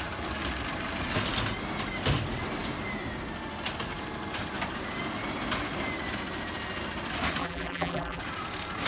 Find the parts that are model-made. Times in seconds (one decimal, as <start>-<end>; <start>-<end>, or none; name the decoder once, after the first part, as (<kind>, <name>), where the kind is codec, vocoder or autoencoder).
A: 7.4-8.2 (vocoder, BigVGAN v2)